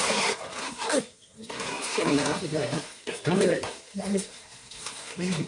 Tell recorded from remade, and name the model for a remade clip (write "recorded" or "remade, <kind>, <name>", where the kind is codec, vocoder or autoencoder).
remade, codec, SNAC